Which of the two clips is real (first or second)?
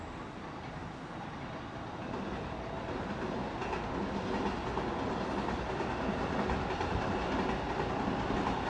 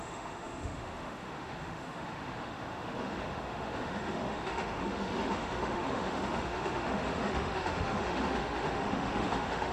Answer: first